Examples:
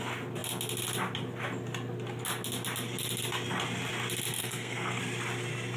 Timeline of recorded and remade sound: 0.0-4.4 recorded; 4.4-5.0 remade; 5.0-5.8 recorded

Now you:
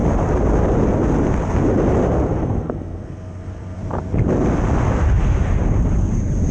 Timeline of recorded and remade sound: 0.0-2.3 recorded; 2.3-3.8 remade; 3.8-6.5 recorded

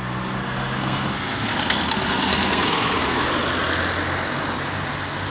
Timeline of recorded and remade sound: 0.0-3.3 remade; 3.3-5.3 recorded

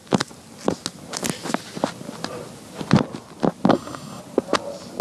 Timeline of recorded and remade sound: 0.0-3.7 recorded; 3.7-4.2 remade; 4.2-5.0 recorded